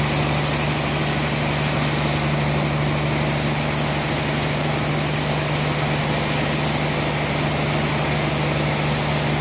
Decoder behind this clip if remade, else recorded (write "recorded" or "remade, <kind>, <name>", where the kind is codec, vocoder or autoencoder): recorded